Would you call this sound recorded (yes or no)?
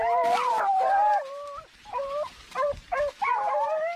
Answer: no